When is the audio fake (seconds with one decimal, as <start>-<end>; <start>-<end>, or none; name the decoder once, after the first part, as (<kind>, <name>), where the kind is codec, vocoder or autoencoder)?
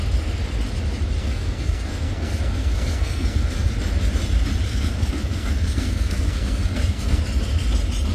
1.2-3.7 (codec, SNAC); 4.7-7.2